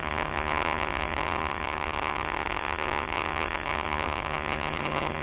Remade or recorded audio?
remade